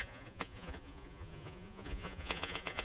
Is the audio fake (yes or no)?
yes